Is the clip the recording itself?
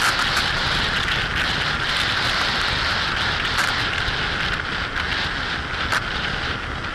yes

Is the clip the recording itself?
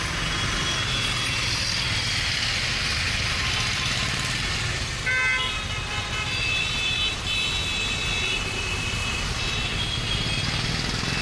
yes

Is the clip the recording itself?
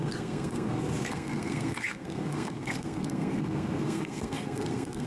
no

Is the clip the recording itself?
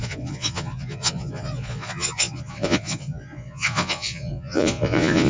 no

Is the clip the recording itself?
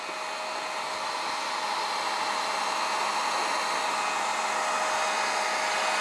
yes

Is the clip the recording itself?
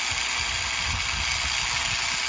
yes